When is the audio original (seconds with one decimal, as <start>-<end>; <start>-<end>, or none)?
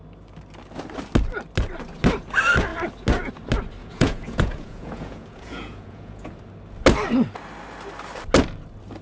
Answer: 0.0-3.8; 6.4-9.0